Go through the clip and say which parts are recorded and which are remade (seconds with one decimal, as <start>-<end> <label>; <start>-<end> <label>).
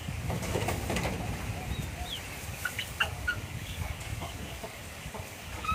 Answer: 0.0-0.8 remade; 0.8-2.5 recorded; 2.5-5.7 remade